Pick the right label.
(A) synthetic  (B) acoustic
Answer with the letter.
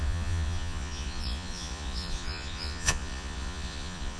A